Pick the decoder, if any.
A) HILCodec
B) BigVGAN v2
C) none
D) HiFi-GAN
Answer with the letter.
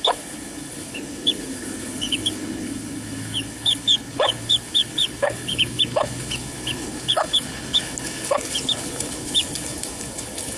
A